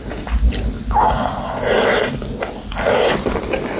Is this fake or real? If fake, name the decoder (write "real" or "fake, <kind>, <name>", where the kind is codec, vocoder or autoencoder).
real